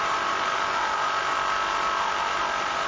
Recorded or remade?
recorded